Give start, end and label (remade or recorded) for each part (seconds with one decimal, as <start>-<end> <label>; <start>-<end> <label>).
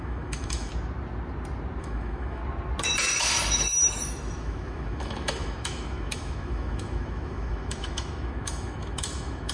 0.0-0.7 remade; 0.7-1.8 recorded; 1.8-2.4 remade; 2.4-3.2 recorded; 3.2-9.5 remade